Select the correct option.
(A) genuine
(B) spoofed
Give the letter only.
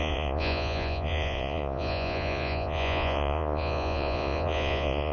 B